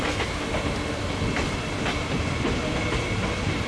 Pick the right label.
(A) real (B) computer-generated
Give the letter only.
A